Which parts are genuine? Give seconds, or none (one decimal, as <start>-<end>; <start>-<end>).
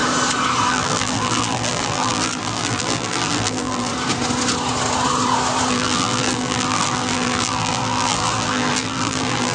0.0-0.7; 3.9-5.7